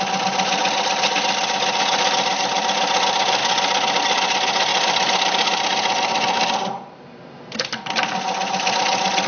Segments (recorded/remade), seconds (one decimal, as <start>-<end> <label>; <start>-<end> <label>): 0.0-9.3 recorded